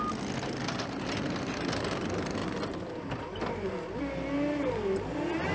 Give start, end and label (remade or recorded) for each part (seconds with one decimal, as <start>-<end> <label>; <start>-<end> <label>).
0.0-5.5 recorded